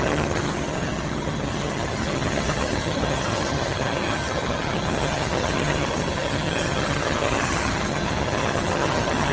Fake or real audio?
fake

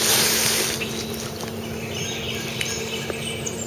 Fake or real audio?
real